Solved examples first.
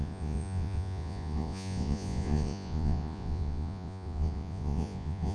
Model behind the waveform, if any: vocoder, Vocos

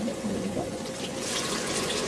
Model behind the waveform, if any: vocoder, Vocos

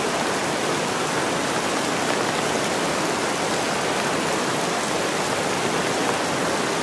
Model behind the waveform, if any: none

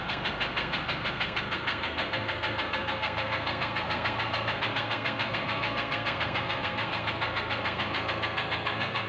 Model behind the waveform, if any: codec, SNAC